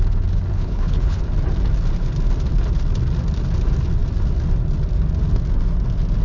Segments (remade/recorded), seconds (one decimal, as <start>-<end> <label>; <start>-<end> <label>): 0.0-0.5 recorded; 0.5-1.2 remade; 1.2-6.2 recorded